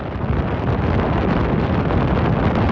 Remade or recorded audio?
recorded